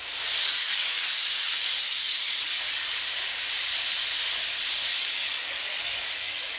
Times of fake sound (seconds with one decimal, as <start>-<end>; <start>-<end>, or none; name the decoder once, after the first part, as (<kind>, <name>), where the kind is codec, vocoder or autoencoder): 0.4-2.6 (codec, DAC); 4.9-6.6